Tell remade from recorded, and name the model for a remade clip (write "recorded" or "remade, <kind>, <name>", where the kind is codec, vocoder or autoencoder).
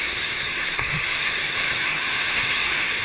remade, codec, SNAC